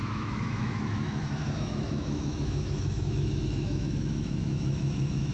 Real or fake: fake